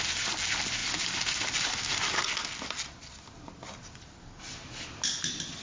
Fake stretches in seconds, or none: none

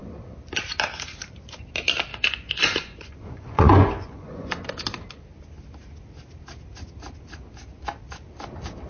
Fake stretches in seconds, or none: 2.1-4.5 (vocoder, Vocos)

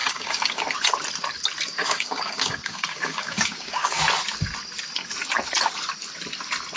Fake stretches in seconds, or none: 0.0-0.6 (codec, DAC); 1.8-4.0

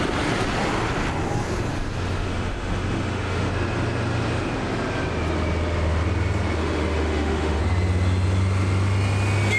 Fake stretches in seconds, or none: 2.3-3.5 (autoencoder, DAC-VAE); 6.6-7.6

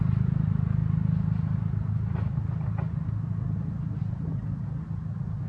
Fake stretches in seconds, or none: none

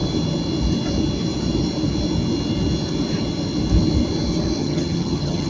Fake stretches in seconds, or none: 4.6-5.5 (vocoder, HiFi-GAN)

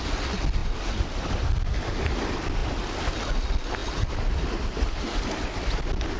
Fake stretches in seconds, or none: none